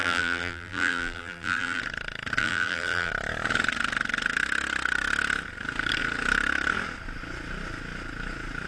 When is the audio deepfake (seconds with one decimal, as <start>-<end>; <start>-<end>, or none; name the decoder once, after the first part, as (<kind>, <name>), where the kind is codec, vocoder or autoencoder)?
0.0-1.8 (vocoder, BigVGAN v2); 2.4-3.1